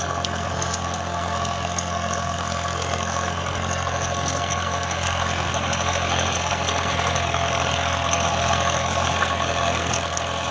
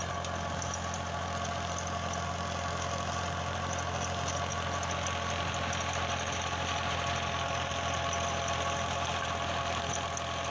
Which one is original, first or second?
second